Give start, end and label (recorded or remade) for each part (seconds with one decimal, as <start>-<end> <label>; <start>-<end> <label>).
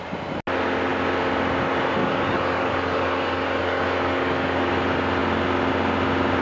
0.0-2.0 recorded; 2.0-4.7 remade; 4.7-6.4 recorded